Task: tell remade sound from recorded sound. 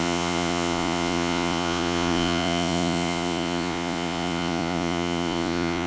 remade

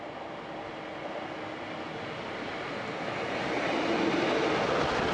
recorded